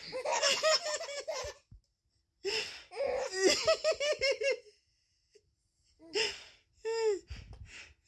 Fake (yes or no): no